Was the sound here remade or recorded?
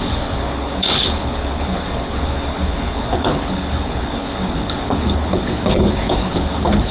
remade